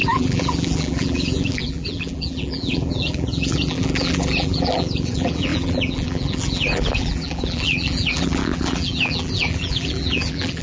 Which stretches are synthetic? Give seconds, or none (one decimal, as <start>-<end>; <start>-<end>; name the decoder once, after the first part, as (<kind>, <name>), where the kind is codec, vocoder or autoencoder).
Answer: 0.0-10.6 (vocoder, BigVGAN v2)